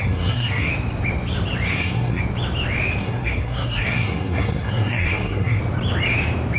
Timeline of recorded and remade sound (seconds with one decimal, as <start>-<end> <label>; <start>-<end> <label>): 0.0-0.7 remade; 0.7-1.7 recorded; 1.7-2.2 remade; 2.2-3.0 recorded; 3.0-5.6 remade; 5.6-6.6 recorded